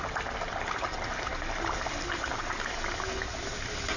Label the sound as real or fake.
real